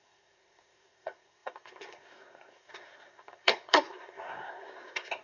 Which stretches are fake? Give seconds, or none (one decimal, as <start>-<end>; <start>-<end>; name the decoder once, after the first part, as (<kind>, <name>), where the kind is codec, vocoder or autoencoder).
0.0-5.2 (codec, SNAC)